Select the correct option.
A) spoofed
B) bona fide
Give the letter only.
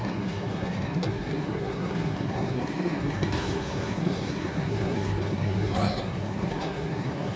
A